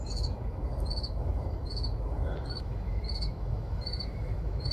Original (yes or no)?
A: no